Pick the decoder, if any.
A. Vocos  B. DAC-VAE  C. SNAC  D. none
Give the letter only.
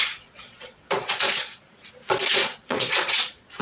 A